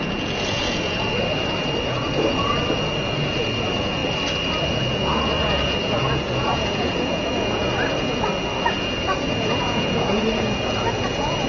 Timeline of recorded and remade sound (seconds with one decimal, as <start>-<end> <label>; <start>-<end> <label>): 0.0-4.0 remade; 4.0-4.7 recorded; 4.7-8.3 remade; 8.3-8.8 recorded; 8.8-11.5 remade